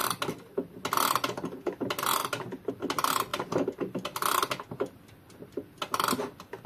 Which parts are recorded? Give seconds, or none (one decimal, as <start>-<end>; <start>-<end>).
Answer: 0.0-6.7